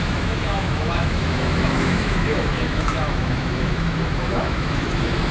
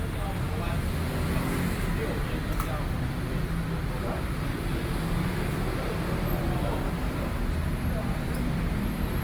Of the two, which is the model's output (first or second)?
first